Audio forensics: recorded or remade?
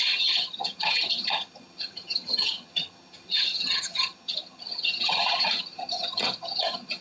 remade